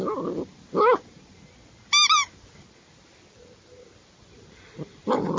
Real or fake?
real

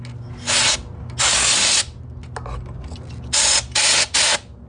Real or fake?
real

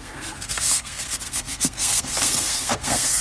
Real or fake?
fake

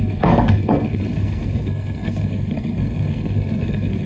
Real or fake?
fake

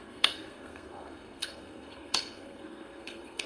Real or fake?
fake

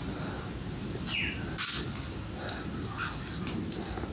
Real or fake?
real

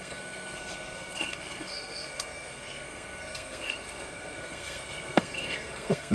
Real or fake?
fake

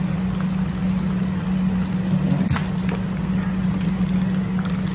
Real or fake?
real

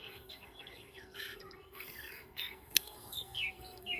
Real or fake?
fake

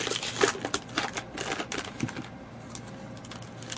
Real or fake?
real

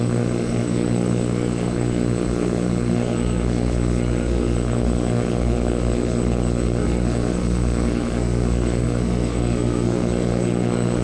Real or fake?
fake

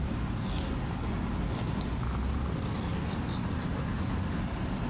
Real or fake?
real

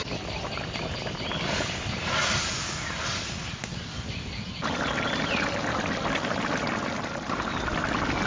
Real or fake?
real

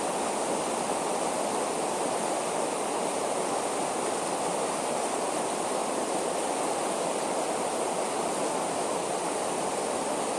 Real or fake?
real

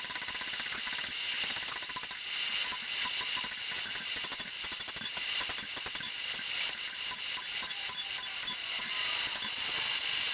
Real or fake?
real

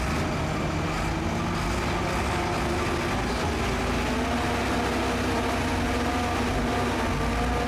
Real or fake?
real